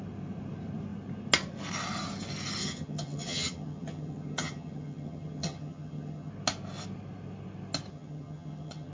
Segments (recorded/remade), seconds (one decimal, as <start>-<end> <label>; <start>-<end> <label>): 0.0-2.6 recorded; 2.6-6.3 remade; 6.3-7.9 recorded; 7.9-8.9 remade